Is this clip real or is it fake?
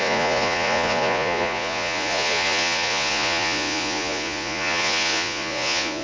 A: fake